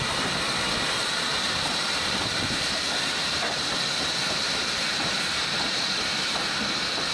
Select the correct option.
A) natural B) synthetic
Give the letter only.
B